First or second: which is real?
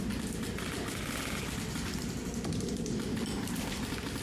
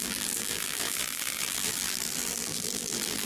first